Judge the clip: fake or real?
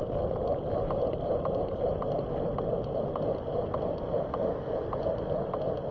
real